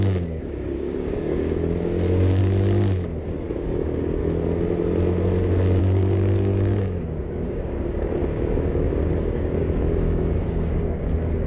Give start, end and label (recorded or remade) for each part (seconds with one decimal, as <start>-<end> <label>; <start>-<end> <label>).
0.0-2.4 remade; 2.4-3.5 recorded; 3.5-4.2 remade; 4.2-5.8 recorded; 5.8-11.5 remade